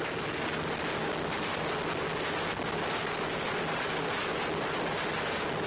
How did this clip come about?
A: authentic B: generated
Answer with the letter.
A